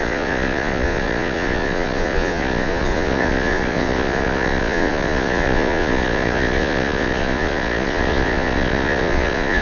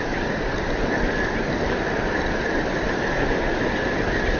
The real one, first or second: second